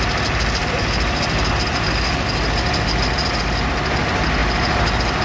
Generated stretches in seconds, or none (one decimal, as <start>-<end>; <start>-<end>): none